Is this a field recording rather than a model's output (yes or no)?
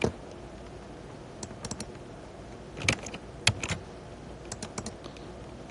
yes